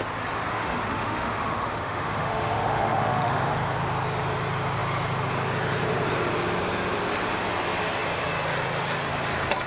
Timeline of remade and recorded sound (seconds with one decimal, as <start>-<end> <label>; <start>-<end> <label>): 0.0-0.5 recorded; 0.5-3.5 remade; 3.5-9.7 recorded

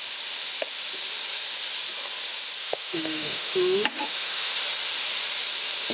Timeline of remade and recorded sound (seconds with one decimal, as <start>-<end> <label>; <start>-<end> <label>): 0.0-2.6 recorded; 2.6-4.5 remade; 4.5-5.9 recorded

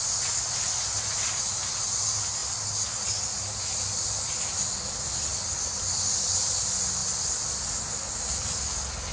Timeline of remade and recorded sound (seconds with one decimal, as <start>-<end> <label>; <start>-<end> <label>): 0.0-9.1 recorded

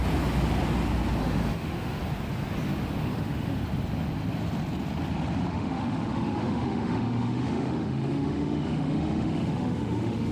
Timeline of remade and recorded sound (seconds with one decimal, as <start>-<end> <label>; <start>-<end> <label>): 0.0-1.2 recorded; 1.2-2.0 remade; 2.0-3.0 recorded; 3.0-3.6 remade; 3.6-5.5 recorded; 5.5-10.3 remade